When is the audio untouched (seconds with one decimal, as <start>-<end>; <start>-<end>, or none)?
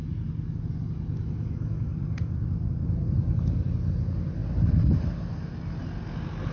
0.0-4.4; 5.2-6.5